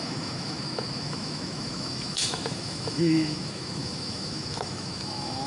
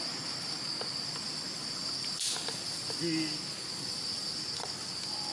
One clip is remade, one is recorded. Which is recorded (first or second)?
second